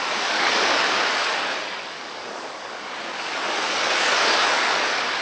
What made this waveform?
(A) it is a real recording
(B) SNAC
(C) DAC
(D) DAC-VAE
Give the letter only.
C